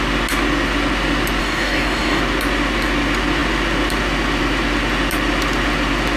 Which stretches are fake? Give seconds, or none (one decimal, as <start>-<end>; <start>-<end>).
1.4-2.2

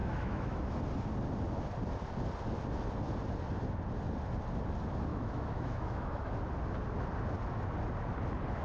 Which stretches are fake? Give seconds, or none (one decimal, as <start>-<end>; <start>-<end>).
0.0-0.8; 5.1-6.3

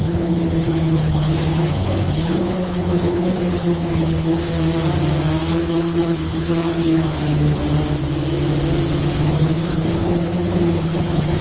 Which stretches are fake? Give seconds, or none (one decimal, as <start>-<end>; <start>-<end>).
0.0-4.5; 5.6-7.6; 9.1-11.4

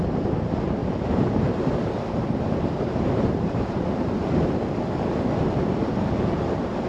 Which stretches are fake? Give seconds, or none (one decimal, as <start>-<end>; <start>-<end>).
0.8-4.0

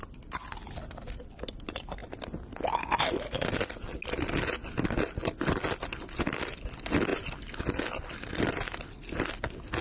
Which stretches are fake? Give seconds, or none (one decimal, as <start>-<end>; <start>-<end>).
none

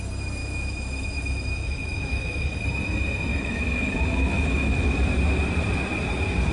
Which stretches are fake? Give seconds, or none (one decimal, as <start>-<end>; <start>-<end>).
0.4-2.6; 3.3-4.9

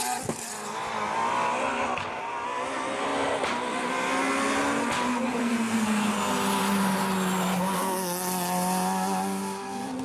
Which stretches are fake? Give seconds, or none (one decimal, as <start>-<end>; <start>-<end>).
5.4-6.1

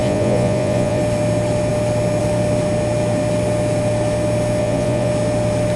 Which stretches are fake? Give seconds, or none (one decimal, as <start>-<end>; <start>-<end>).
0.0-1.0; 4.6-5.1